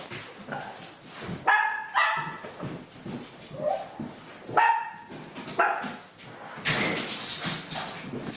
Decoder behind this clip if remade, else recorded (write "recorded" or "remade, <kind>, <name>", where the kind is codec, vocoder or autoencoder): recorded